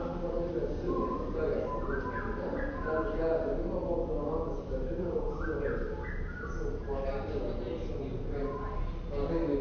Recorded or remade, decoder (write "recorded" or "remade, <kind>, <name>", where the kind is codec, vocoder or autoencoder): recorded